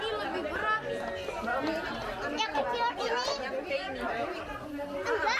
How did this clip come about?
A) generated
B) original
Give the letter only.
B